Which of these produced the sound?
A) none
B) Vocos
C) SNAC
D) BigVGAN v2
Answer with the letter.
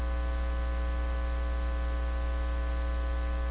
A